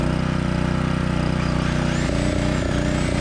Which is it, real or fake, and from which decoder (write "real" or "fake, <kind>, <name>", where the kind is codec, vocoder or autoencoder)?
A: real